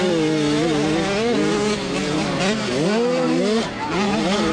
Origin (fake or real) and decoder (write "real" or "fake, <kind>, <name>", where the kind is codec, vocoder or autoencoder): real